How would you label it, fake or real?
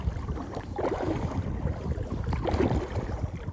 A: fake